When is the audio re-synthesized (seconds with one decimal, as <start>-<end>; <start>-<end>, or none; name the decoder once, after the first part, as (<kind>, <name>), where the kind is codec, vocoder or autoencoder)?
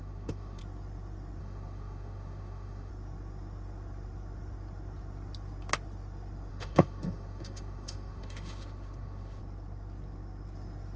0.0-0.6 (autoencoder, DAC-VAE); 1.4-2.9; 6.5-9.4